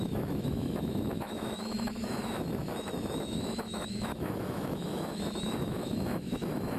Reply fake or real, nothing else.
fake